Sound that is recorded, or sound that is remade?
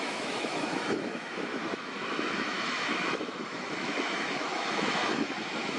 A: remade